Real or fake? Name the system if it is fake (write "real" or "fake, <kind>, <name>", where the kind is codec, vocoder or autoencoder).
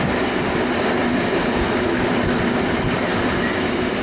real